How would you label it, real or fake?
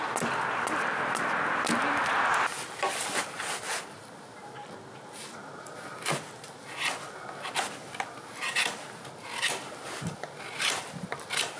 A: real